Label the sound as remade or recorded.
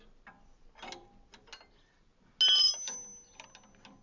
recorded